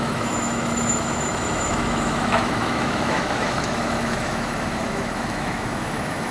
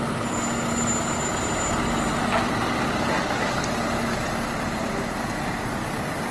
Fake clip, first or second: first